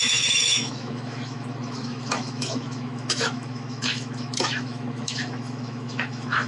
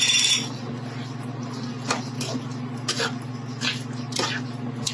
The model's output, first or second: first